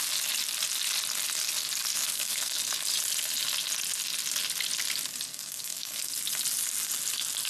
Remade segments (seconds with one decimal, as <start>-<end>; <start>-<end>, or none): 1.9-2.6; 5.3-6.1